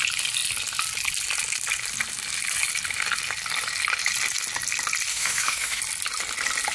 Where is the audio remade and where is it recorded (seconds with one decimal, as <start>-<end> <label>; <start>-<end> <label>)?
0.0-5.1 recorded; 5.1-5.8 remade; 5.8-6.7 recorded